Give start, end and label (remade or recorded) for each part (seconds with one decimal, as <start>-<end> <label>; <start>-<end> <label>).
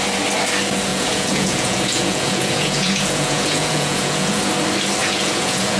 0.0-0.9 recorded; 0.9-4.4 remade; 4.4-5.0 recorded; 5.0-5.8 remade